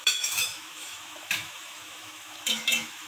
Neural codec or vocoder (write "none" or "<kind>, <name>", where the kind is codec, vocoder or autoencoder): autoencoder, DAC-VAE